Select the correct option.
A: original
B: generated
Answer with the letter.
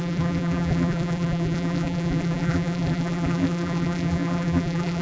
B